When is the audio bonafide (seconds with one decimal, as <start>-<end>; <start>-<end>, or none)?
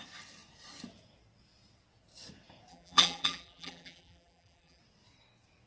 0.0-2.7; 4.8-5.7